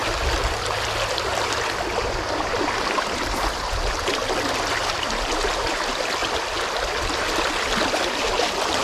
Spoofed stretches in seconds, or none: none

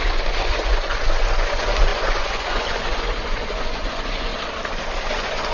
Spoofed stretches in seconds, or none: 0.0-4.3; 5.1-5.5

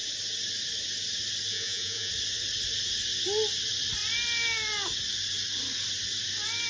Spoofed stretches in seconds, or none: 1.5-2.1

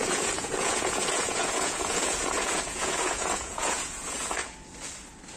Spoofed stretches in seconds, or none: 0.0-4.4

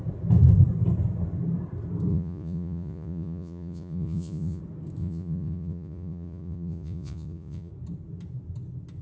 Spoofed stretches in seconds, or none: 2.1-4.6; 5.0-7.7